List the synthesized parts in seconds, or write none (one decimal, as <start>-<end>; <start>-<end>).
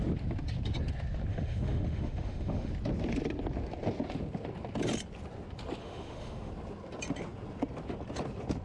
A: 1.3-2.7; 5.8-6.5